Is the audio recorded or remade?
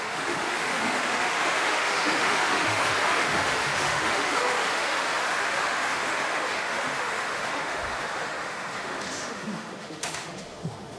remade